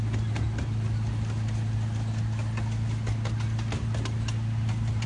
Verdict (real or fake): real